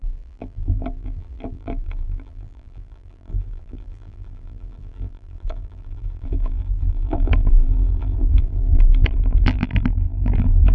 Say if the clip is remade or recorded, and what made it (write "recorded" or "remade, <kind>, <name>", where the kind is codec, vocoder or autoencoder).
remade, vocoder, BigVGAN v2